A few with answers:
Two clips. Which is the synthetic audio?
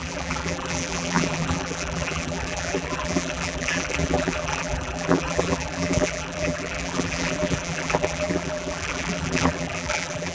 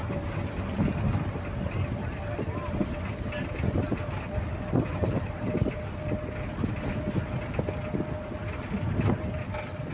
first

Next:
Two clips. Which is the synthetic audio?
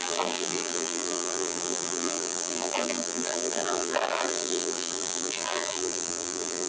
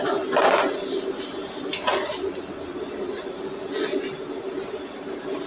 first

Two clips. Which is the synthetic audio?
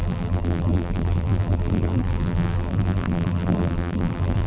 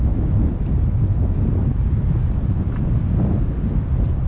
first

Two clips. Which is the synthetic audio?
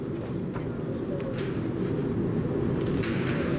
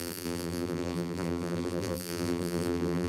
second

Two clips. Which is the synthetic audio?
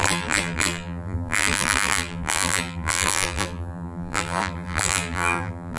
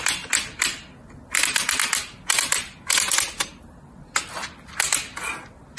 first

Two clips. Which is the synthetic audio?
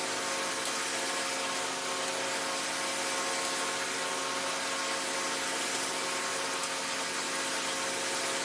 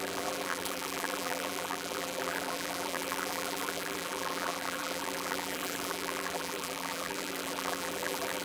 second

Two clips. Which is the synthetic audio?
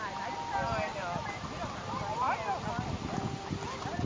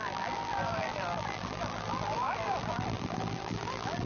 second